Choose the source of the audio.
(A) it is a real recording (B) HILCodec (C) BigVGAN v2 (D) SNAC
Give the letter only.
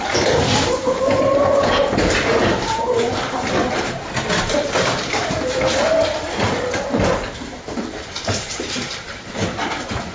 C